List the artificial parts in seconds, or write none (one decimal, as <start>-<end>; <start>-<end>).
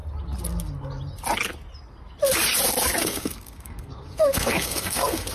3.0-5.3